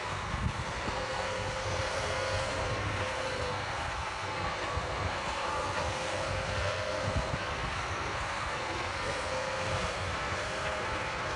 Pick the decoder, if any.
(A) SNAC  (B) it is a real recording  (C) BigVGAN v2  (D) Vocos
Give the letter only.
A